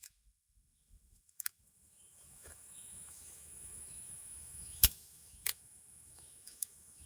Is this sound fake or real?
fake